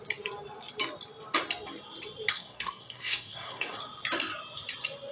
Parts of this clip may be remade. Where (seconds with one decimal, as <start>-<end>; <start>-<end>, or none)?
2.3-3.8